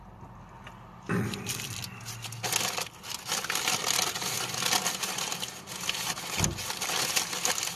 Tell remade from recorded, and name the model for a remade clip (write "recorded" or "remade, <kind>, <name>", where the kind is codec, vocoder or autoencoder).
recorded